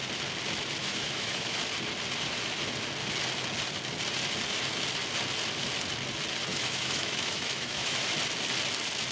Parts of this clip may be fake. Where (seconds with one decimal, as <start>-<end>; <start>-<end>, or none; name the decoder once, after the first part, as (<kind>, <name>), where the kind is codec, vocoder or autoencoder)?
0.8-1.6 (autoencoder, DAC-VAE); 6.5-8.1